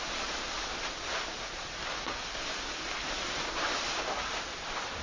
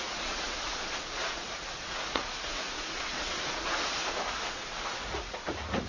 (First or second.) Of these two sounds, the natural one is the first